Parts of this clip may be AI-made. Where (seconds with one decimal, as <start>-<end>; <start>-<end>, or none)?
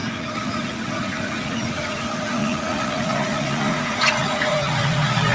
0.0-5.3